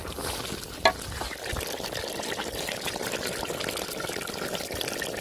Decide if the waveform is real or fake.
real